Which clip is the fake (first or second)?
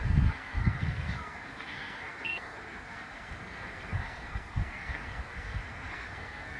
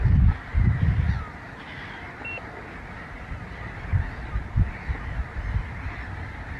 first